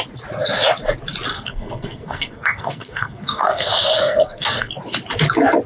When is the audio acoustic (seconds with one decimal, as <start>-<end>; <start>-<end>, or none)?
0.0-1.3; 4.7-5.7

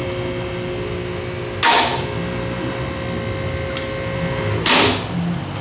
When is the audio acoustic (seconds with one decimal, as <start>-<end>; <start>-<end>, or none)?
0.0-5.6

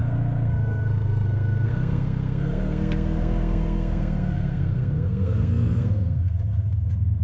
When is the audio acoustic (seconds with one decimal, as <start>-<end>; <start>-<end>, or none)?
none

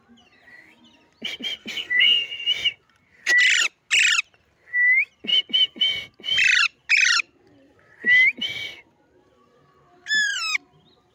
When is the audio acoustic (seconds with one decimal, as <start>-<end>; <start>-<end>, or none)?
0.0-1.6; 2.3-11.1